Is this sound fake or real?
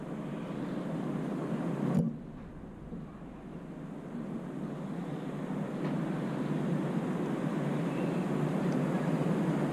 real